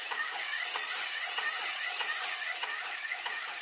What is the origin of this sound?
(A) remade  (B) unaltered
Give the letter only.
A